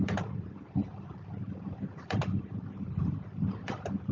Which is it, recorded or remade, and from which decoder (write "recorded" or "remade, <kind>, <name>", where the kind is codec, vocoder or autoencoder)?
remade, vocoder, BigVGAN v2